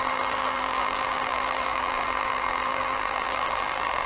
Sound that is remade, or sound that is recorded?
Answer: remade